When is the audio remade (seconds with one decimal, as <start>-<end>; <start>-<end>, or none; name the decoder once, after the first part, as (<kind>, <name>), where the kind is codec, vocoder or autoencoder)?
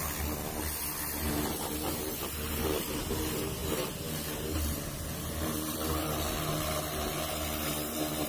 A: 1.2-2.1 (vocoder, BigVGAN v2)